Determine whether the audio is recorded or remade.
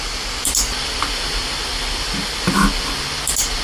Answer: recorded